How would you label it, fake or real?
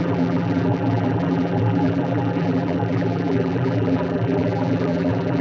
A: fake